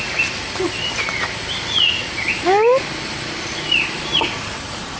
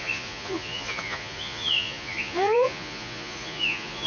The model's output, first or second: second